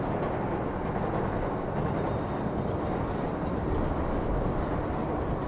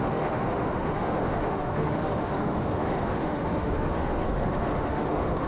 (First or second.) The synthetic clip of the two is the second